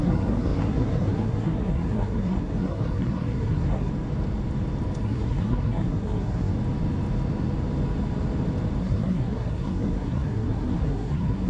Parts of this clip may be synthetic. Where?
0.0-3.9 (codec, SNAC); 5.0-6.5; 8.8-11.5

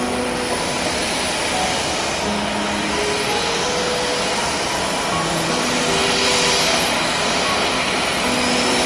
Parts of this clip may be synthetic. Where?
none